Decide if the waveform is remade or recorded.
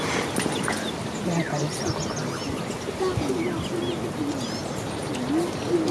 recorded